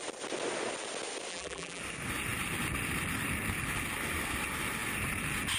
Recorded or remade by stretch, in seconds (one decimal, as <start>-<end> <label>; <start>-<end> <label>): 0.0-1.3 recorded; 1.3-1.8 remade; 1.8-5.6 recorded